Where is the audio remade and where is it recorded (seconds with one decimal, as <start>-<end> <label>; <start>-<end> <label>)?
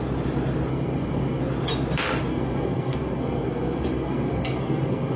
0.0-0.7 recorded; 0.7-1.4 remade; 1.4-2.3 recorded; 2.3-5.2 remade